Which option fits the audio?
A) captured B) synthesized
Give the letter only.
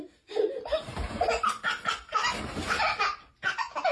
A